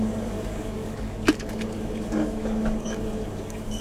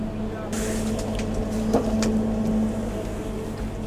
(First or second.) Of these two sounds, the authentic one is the second